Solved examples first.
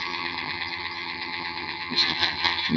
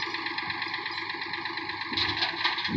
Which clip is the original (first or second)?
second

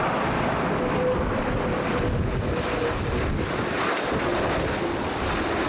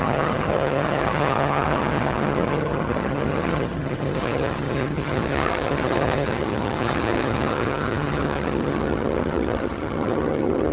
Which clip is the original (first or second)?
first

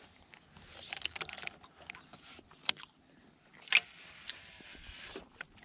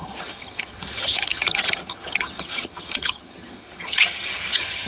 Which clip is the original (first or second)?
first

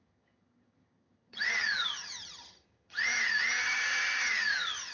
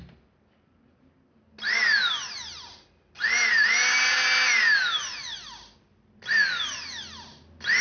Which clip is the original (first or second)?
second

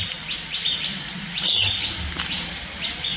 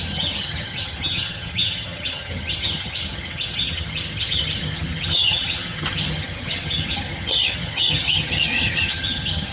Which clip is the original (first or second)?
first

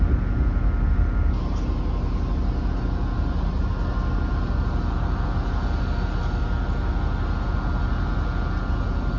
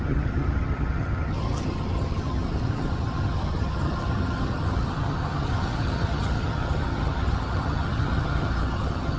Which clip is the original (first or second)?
first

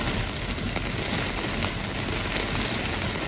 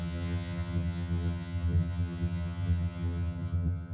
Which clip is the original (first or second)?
first